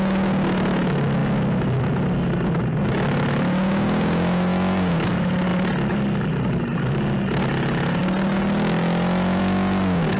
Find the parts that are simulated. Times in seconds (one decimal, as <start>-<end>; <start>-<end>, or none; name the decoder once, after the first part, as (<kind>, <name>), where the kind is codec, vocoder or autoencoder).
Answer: none